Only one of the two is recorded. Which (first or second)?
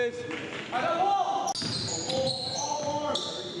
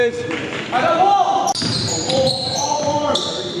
first